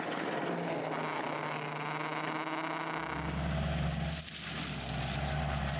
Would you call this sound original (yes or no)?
yes